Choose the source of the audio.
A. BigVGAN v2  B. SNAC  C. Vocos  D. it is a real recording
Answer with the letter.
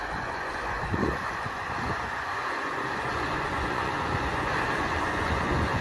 C